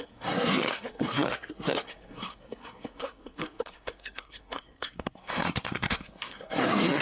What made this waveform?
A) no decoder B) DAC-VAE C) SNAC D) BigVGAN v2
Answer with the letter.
C